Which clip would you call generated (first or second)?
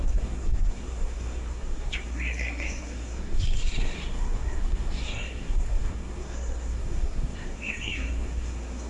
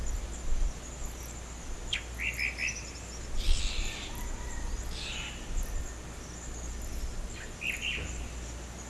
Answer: first